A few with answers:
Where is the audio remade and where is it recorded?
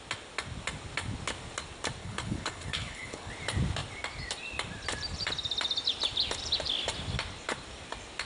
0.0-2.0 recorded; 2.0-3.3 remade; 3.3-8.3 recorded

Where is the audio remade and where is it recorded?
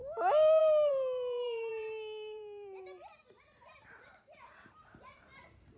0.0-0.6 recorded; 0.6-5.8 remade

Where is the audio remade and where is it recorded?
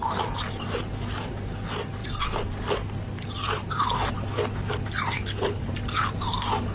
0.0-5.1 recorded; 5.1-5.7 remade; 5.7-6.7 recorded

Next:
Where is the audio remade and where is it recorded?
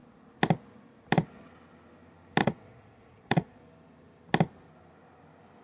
0.0-2.4 recorded; 2.4-3.6 remade; 3.6-5.6 recorded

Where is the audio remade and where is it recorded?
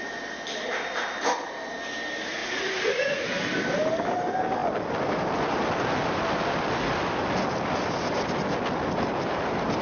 0.0-2.4 recorded; 2.4-3.2 remade; 3.2-9.8 recorded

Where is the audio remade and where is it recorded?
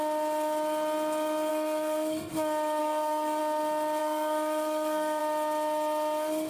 0.0-1.5 recorded; 1.5-2.3 remade; 2.3-2.8 recorded; 2.8-3.4 remade; 3.4-4.0 recorded; 4.0-5.2 remade; 5.2-6.5 recorded